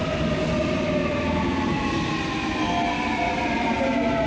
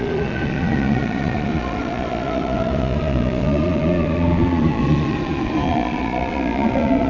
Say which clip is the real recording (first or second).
first